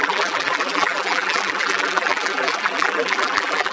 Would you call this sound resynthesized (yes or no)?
yes